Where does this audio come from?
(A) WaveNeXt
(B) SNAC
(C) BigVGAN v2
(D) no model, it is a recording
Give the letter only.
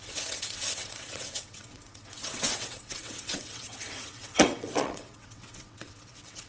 A